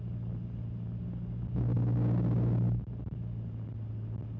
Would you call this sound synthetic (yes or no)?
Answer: no